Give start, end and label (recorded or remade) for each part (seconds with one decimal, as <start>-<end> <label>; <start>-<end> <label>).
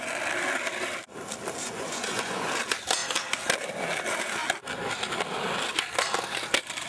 0.0-1.6 recorded; 1.6-2.5 remade; 2.5-6.9 recorded